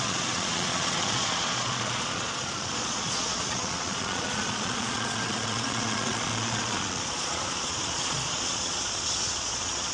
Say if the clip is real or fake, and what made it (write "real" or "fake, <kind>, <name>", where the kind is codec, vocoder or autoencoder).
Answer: fake, vocoder, Vocos